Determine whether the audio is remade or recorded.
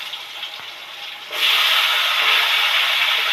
recorded